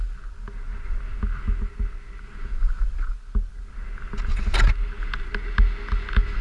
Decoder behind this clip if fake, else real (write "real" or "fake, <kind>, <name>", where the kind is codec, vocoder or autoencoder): real